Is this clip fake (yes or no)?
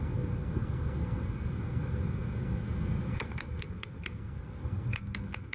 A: yes